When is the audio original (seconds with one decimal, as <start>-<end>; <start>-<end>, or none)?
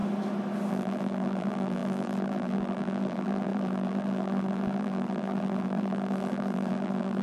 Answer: 0.0-0.7